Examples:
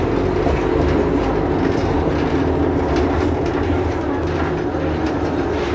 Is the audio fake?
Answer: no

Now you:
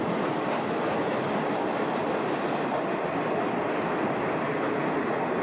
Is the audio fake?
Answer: no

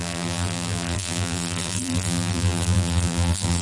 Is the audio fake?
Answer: yes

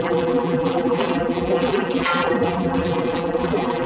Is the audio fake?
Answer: yes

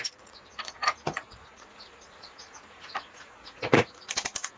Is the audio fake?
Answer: yes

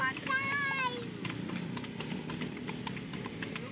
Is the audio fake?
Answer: no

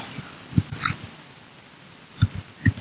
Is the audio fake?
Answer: no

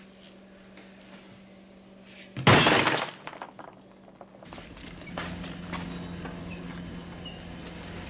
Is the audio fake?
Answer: no